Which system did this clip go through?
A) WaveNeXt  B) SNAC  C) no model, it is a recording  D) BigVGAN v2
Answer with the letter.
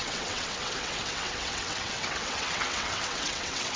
A